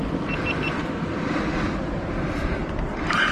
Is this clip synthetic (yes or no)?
no